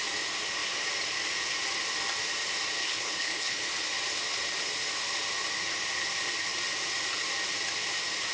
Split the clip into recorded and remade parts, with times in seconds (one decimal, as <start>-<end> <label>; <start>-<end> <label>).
0.0-2.8 recorded; 2.8-3.6 remade; 3.6-8.3 recorded